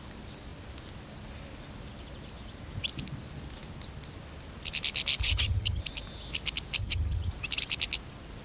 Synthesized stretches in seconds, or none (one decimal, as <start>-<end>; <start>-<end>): 5.2-5.8; 6.8-7.3